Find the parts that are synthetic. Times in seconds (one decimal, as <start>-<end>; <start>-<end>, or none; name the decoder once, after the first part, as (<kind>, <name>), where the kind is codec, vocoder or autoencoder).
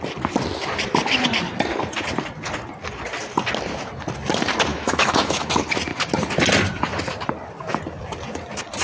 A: 4.7-5.5 (autoencoder, DAC-VAE)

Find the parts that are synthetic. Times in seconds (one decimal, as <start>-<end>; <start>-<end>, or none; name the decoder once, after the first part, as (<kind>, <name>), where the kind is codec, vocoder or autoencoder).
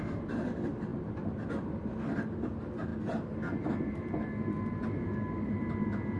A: 0.9-1.9 (vocoder, BigVGAN v2)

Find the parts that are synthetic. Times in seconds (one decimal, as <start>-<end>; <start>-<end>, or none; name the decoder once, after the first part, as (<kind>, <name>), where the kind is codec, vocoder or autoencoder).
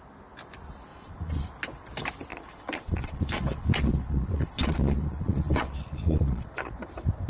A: 0.9-1.5 (vocoder, Vocos); 2.3-6.7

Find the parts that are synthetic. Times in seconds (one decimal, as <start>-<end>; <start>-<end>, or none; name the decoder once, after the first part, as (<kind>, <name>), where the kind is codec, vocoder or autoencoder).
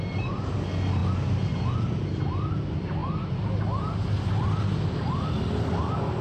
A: none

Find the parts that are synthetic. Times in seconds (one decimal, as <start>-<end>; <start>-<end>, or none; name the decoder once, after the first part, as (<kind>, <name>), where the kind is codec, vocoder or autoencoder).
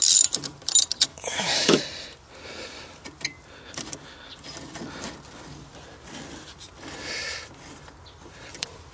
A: 1.1-1.8 (autoencoder, DAC-VAE)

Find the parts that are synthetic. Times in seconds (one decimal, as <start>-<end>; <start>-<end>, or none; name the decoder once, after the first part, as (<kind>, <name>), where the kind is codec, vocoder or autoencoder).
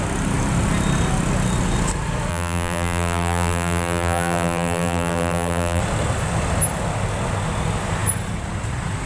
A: 2.3-5.8 (vocoder, BigVGAN v2)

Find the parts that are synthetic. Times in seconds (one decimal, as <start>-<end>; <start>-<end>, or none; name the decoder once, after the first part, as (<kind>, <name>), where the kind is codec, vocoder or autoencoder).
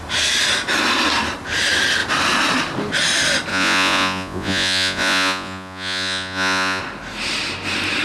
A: 3.5-6.8 (vocoder, Vocos)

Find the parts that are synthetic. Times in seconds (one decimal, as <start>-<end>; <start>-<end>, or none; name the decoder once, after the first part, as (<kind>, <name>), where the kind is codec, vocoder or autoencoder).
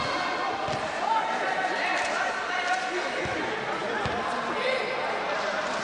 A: 1.9-2.8 (vocoder, BigVGAN v2); 3.8-4.8